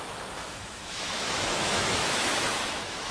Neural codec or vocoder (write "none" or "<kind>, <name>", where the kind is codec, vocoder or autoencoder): autoencoder, DAC-VAE